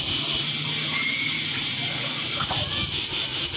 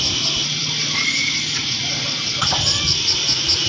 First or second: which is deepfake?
second